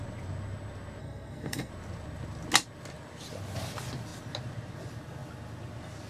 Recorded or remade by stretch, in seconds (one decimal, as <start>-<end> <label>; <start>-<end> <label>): 0.0-1.0 recorded; 1.0-1.7 remade; 1.7-6.1 recorded

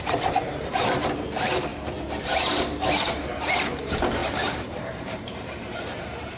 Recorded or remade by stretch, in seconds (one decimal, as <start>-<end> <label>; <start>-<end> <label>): 0.0-1.7 remade; 1.7-3.8 recorded; 3.8-6.4 remade

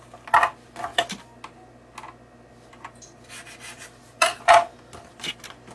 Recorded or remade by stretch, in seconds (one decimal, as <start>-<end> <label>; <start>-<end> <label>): 0.0-5.7 recorded

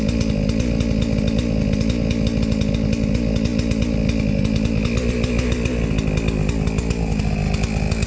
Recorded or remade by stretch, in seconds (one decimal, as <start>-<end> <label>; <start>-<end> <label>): 0.0-8.1 recorded

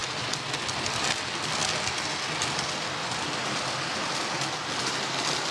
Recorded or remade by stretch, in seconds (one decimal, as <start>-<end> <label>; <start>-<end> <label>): 0.0-5.5 recorded

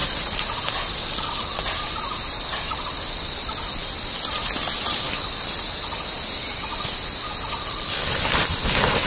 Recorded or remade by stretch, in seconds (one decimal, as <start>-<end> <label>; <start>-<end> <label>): 0.0-9.1 recorded

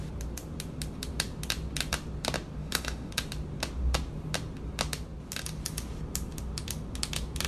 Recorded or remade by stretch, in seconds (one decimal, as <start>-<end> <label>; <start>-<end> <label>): 0.0-2.6 recorded; 2.6-3.1 remade; 3.1-7.5 recorded

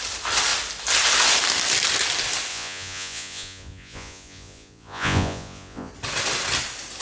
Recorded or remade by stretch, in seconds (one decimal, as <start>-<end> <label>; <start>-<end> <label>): 0.0-2.5 recorded; 2.5-5.9 remade; 5.9-7.0 recorded